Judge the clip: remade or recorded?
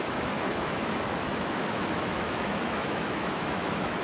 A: remade